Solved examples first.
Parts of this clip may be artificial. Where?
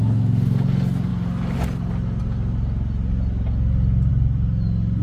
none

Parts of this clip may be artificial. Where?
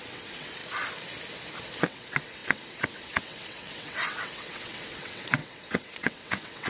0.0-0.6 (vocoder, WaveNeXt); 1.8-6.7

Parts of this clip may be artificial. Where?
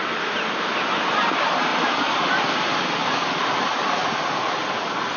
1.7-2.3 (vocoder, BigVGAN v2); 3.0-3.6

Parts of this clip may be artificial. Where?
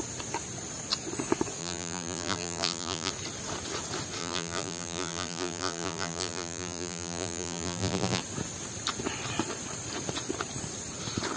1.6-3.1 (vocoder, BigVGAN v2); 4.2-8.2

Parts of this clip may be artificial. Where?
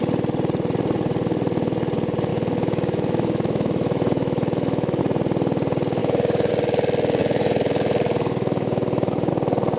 2.3-5.0 (autoencoder, DAC-VAE); 6.0-6.5; 7.2-9.3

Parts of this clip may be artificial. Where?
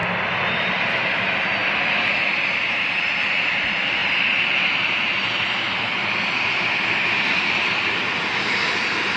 7.3-7.8 (vocoder, BigVGAN v2)